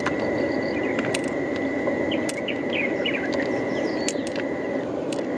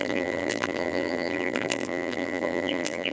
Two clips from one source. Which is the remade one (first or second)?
second